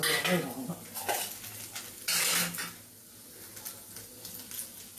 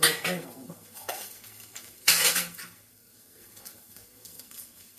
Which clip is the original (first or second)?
first